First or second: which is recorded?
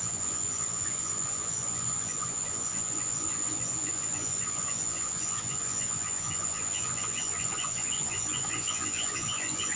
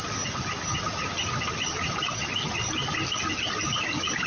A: second